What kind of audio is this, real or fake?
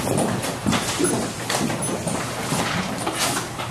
real